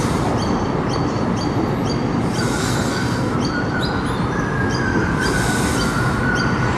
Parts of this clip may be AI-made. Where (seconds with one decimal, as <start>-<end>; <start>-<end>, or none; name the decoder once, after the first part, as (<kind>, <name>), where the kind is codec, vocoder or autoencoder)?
2.6-3.3 (codec, SNAC)